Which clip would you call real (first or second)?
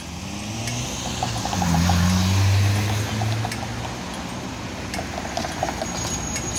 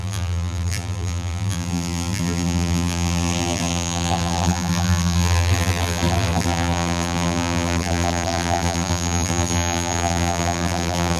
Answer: first